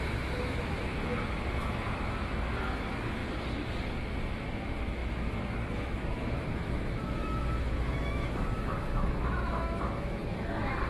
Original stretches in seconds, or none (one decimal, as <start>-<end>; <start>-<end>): 3.2-4.3

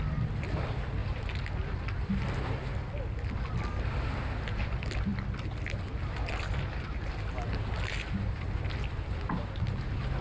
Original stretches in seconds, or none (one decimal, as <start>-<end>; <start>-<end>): 0.0-10.2

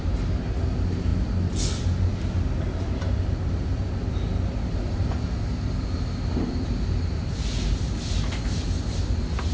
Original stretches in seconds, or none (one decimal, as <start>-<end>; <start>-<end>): 0.0-9.5

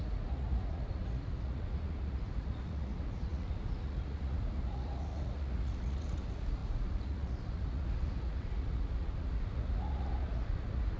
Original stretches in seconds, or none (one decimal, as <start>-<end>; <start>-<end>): none